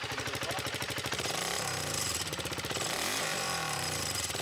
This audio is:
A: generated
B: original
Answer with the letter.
A